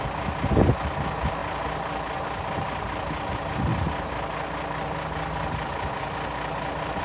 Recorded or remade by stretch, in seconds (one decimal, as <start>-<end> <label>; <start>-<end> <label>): 0.0-7.0 recorded